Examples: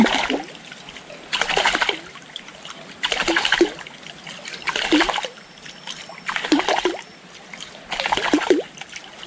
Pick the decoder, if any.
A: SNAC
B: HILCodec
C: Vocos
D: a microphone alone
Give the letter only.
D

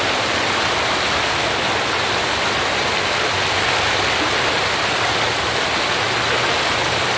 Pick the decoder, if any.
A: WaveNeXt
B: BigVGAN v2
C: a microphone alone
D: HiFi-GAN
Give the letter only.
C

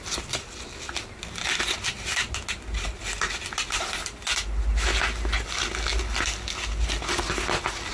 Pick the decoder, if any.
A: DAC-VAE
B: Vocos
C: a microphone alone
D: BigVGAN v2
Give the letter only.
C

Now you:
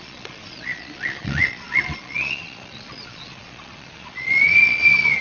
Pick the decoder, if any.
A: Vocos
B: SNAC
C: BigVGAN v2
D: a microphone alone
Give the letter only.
A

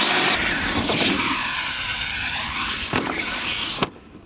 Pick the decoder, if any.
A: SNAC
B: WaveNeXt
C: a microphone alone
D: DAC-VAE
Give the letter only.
C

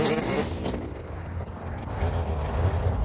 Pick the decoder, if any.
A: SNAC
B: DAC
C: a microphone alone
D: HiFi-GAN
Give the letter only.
C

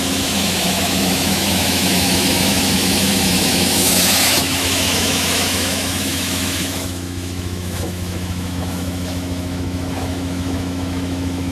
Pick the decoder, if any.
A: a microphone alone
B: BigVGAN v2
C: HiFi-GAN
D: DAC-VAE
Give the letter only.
D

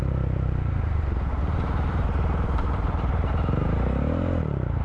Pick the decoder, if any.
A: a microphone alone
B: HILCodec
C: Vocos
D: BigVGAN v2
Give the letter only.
D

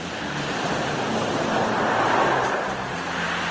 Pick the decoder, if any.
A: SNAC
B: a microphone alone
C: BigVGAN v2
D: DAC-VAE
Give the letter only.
B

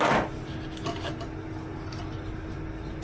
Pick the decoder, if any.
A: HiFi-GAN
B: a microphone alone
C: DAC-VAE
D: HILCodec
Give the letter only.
B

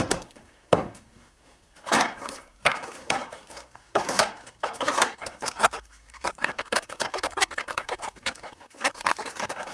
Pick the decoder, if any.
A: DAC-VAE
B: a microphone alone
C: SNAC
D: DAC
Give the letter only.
C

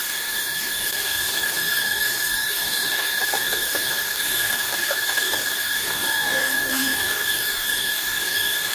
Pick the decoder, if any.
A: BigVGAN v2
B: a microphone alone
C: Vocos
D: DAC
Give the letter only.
D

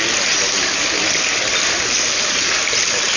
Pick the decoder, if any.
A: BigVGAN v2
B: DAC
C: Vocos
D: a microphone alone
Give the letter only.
D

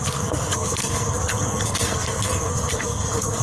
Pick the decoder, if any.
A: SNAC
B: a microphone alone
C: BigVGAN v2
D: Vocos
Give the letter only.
A